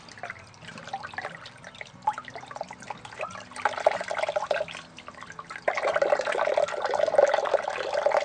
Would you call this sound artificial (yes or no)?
no